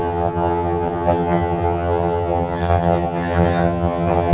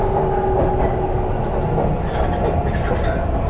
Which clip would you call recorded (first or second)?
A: second